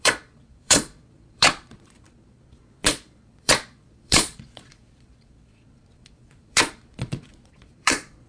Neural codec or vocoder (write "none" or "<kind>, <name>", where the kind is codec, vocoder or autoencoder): vocoder, Vocos